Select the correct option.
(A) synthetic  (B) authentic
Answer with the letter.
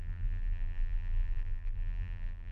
A